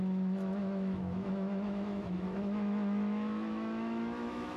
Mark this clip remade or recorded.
remade